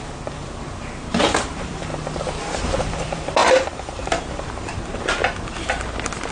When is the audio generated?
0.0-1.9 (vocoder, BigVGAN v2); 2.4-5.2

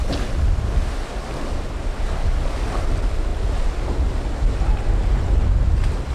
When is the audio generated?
none

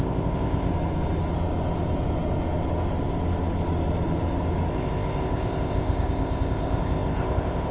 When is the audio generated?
0.0-0.7 (codec, ZipCodec); 4.7-7.7

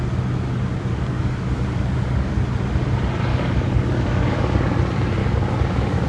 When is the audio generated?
0.9-2.3 (codec, DAC); 3.3-4.8; 5.2-6.1